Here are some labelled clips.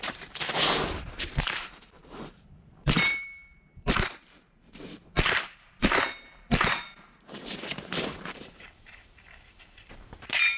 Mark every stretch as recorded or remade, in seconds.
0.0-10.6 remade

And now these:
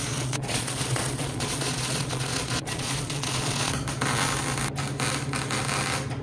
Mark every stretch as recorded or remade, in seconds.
0.0-3.7 remade; 3.7-6.2 recorded